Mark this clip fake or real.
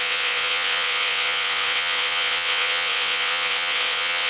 fake